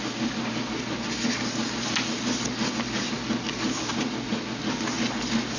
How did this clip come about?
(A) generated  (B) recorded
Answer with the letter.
B